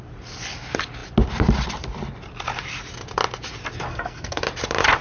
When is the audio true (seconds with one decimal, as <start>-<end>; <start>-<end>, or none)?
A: 0.0-3.9; 4.4-5.0